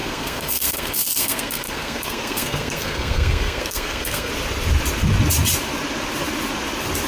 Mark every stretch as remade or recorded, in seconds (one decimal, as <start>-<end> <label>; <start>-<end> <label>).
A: 0.0-4.3 remade; 4.3-7.1 recorded